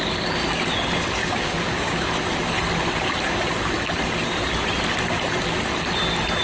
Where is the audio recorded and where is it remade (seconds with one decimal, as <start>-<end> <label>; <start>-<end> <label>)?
0.0-1.2 recorded; 1.2-2.1 remade; 2.1-6.4 recorded